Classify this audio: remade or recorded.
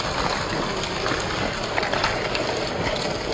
recorded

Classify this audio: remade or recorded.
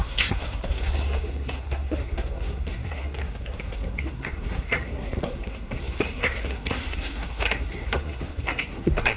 remade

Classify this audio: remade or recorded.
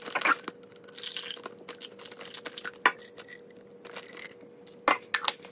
recorded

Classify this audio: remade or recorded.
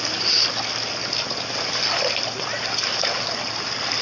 recorded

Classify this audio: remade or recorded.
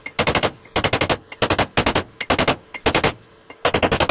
recorded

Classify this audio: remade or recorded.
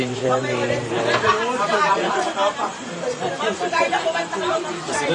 remade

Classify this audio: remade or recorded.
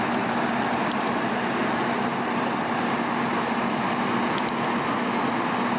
recorded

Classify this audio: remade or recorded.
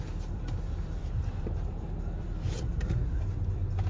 remade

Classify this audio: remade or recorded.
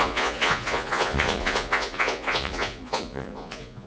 remade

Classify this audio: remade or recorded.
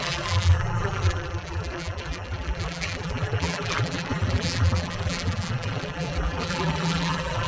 remade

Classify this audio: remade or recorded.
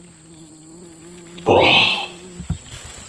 recorded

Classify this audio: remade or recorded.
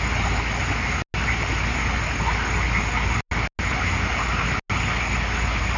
recorded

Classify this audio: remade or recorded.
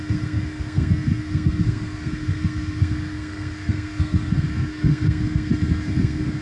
remade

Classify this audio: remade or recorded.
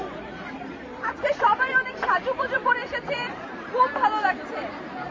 remade